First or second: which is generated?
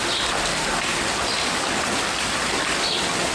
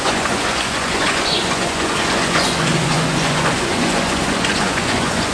second